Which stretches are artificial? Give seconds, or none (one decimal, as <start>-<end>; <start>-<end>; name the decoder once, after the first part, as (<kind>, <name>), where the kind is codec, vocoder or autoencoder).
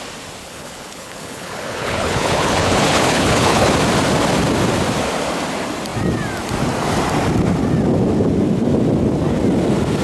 0.4-3.7 (codec, HILCodec)